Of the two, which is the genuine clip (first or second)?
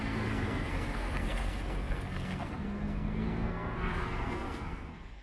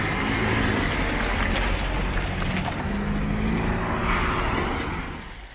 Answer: second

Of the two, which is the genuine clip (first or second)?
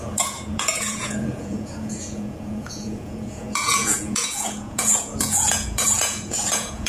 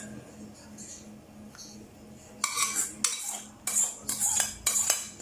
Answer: second